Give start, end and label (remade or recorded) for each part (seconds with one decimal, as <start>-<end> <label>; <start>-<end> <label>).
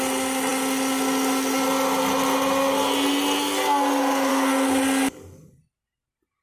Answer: 0.0-6.4 recorded